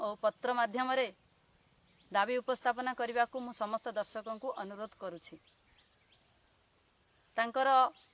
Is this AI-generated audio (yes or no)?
no